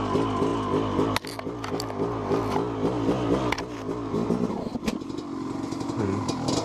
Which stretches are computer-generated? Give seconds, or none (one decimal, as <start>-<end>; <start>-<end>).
none